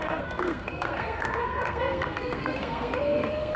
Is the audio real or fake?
fake